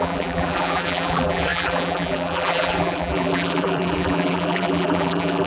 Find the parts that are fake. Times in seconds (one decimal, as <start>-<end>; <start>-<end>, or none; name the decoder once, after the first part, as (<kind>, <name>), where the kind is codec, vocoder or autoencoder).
0.0-5.5 (vocoder, BigVGAN v2)